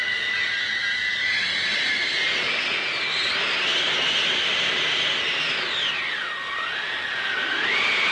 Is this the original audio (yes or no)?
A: yes